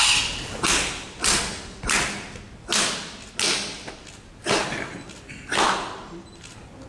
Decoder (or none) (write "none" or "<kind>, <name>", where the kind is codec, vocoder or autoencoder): none